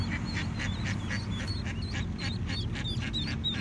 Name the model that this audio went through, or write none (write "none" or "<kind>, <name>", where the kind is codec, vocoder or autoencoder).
none